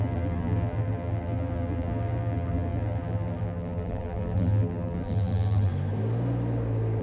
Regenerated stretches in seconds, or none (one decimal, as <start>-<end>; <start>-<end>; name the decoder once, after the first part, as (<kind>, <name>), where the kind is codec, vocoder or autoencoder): 0.0-5.7 (vocoder, BigVGAN v2)